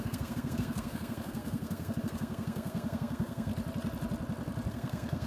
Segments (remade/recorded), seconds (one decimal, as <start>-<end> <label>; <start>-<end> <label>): 0.0-3.5 remade; 3.5-4.7 recorded; 4.7-5.3 remade